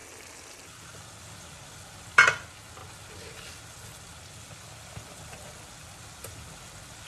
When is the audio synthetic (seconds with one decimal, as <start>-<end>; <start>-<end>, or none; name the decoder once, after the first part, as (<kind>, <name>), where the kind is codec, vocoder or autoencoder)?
none